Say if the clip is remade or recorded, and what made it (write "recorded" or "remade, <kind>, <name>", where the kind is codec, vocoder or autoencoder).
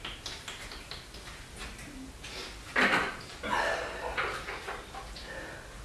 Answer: recorded